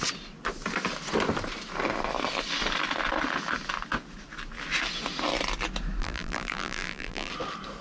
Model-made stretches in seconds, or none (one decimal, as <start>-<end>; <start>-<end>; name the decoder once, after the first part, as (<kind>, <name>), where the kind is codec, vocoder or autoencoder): 6.0-7.3 (vocoder, BigVGAN v2)

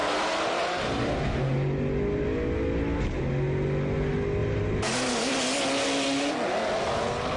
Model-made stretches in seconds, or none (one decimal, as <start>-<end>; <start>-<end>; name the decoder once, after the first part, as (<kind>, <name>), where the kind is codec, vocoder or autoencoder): 0.0-1.1 (vocoder, BigVGAN v2); 4.4-5.3

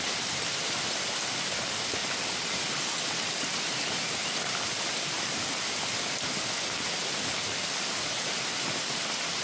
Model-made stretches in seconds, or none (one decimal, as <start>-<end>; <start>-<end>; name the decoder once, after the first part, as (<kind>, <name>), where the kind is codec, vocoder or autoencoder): none

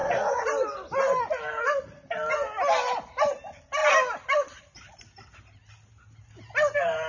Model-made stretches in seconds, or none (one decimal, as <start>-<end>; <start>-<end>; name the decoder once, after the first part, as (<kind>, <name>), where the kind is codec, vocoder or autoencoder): none

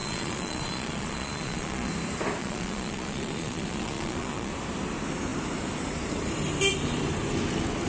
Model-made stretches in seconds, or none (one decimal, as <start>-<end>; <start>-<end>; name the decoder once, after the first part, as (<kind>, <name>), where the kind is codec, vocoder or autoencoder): 0.0-1.9 (vocoder, Vocos); 2.4-4.5

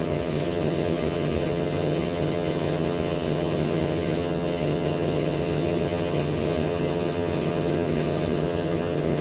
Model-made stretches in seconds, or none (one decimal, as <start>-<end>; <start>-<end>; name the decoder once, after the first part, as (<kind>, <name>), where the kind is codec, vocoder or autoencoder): 0.0-9.2 (vocoder, HiFi-GAN)

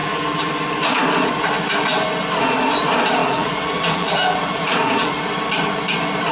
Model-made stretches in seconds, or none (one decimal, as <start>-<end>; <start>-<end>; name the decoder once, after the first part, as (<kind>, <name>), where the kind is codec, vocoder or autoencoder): 0.0-0.5 (vocoder, BigVGAN v2); 3.2-5.1